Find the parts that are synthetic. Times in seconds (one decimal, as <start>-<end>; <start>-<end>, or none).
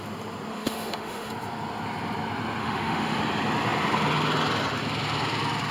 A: 0.5-1.3; 2.6-3.2